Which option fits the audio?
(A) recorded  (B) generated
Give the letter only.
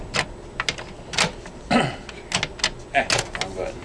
A